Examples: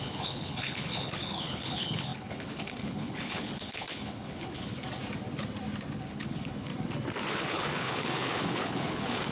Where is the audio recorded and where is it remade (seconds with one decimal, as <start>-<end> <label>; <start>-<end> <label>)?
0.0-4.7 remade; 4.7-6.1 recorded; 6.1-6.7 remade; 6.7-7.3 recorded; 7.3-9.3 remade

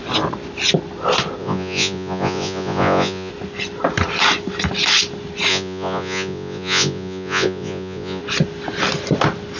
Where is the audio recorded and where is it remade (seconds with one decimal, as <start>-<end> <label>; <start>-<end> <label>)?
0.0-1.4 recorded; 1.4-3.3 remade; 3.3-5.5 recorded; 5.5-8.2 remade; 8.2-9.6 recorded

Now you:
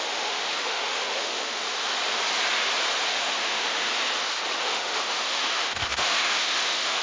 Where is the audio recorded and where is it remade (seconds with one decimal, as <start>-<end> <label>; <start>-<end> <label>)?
0.0-1.6 remade; 1.6-3.1 recorded; 3.1-3.9 remade; 3.9-4.6 recorded; 4.6-7.0 remade

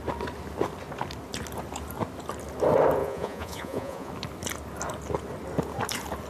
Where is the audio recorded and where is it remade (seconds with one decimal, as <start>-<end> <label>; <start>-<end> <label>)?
0.0-3.0 recorded; 3.0-4.1 remade; 4.1-6.3 recorded